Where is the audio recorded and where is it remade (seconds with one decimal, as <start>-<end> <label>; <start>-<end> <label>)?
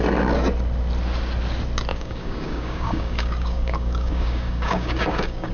0.0-1.9 recorded; 1.9-5.5 remade